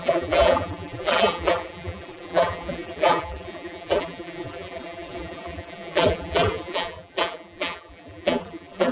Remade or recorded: remade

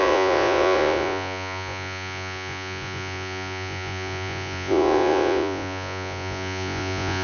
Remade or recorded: remade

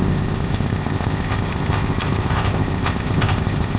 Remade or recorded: remade